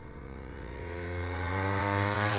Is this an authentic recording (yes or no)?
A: no